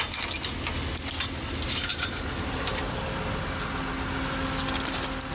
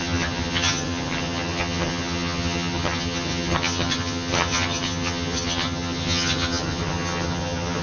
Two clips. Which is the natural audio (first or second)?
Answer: first